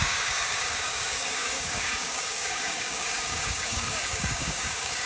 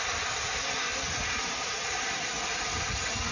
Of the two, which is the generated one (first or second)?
first